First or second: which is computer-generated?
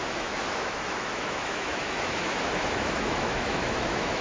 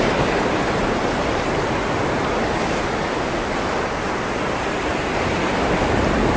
first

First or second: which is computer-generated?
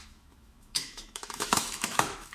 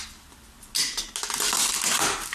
first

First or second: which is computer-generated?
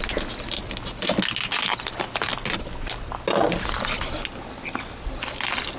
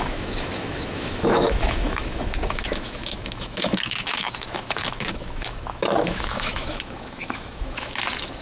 second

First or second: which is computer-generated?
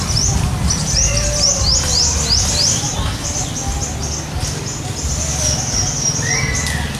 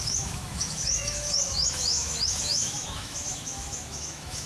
second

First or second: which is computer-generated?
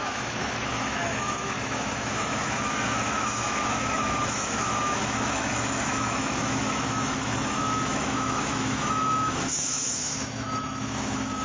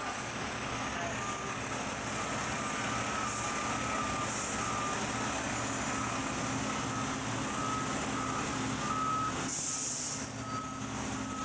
first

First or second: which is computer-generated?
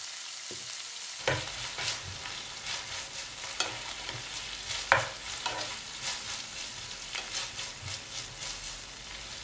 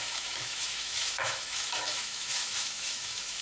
second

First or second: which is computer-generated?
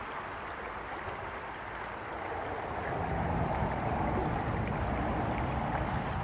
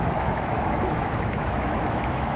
second